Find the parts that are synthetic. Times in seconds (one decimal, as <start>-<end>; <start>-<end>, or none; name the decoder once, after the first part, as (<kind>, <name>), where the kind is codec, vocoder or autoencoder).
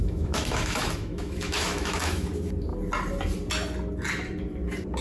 0.0-2.3 (autoencoder, DAC-VAE)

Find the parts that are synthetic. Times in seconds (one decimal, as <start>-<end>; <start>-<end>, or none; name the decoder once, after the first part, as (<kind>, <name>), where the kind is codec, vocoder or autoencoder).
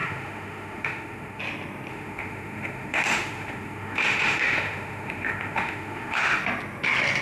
0.0-1.4 (autoencoder, DAC-VAE); 1.9-6.2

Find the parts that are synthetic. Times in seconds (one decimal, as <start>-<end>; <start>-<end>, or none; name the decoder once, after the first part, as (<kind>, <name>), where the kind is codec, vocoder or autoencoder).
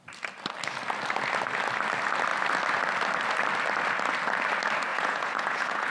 4.9-5.9 (vocoder, Vocos)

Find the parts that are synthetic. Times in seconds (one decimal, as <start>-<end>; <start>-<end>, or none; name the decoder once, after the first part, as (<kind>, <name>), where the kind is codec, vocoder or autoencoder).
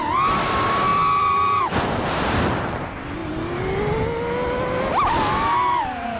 0.9-1.6 (vocoder, BigVGAN v2); 4.9-5.8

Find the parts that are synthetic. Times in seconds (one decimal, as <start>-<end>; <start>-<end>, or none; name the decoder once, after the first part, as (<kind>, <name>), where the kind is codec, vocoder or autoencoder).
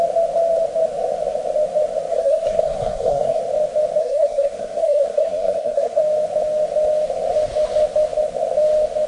2.1-3.4 (codec, SNAC); 4.0-6.0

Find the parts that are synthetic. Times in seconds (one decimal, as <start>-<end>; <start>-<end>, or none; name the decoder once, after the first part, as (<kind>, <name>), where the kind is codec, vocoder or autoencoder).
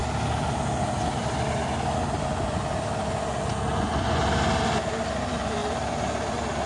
3.7-4.2 (vocoder, Vocos)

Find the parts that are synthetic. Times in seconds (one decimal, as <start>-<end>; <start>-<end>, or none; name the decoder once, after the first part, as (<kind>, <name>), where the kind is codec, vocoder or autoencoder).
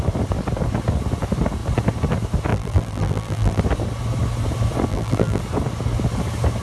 2.5-3.6 (vocoder, BigVGAN v2); 4.9-5.4